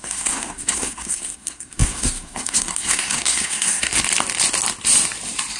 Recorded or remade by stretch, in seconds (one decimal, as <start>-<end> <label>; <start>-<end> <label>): 0.0-3.9 remade; 3.9-5.6 recorded